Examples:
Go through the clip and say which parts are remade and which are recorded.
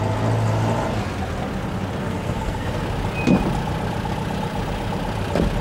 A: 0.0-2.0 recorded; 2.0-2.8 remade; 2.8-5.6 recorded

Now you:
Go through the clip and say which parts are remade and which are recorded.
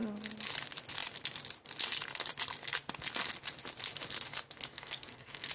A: 0.0-4.7 recorded; 4.7-5.5 remade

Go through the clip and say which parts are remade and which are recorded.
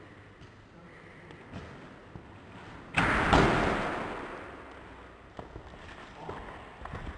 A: 0.0-7.2 recorded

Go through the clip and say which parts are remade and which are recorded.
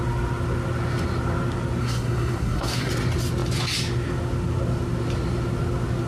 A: 0.0-1.8 recorded; 1.8-2.9 remade; 2.9-6.1 recorded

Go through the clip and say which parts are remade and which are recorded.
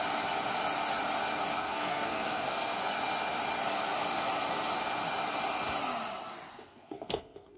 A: 0.0-1.6 recorded; 1.6-2.8 remade; 2.8-6.5 recorded; 6.5-7.6 remade